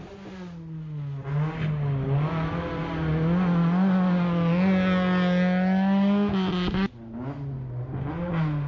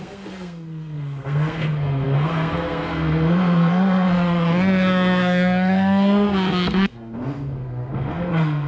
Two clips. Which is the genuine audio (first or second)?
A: first